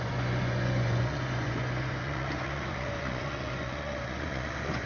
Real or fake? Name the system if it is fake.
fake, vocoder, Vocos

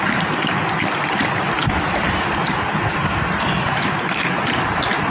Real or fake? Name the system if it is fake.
real